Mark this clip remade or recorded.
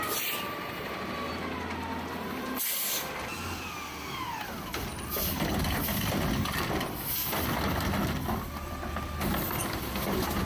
recorded